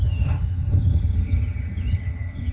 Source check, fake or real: fake